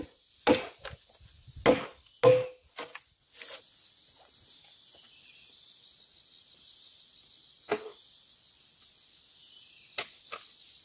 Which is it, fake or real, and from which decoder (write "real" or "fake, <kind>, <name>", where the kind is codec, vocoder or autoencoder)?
real